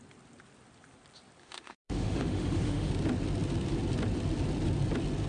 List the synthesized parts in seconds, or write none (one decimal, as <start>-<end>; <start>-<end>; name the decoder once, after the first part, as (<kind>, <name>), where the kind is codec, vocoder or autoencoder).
1.4-2.9 (autoencoder, DAC-VAE)